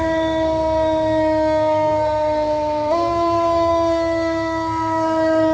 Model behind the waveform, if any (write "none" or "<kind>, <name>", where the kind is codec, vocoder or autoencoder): codec, SNAC